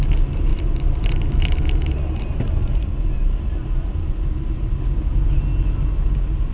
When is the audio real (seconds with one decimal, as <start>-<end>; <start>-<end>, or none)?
0.0-0.5; 4.4-6.5